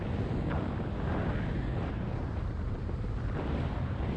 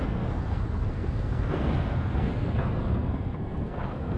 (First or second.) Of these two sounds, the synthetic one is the second